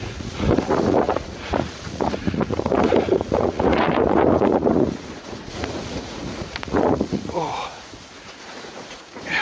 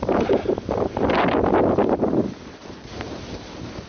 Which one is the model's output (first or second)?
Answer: first